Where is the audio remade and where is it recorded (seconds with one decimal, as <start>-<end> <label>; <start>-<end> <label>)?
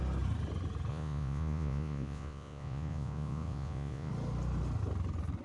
0.0-0.9 recorded; 0.9-4.1 remade; 4.1-5.4 recorded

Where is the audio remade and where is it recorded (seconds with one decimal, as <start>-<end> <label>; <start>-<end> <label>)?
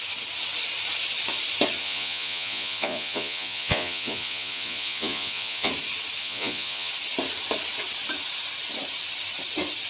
0.0-1.8 recorded; 1.8-5.7 remade; 5.7-6.2 recorded; 6.2-6.9 remade; 6.9-9.9 recorded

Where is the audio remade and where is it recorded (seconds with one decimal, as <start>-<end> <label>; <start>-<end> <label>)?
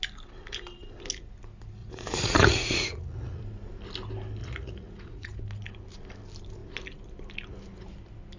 0.0-1.8 recorded; 1.8-3.4 remade; 3.4-4.4 recorded; 4.4-5.4 remade; 5.4-8.4 recorded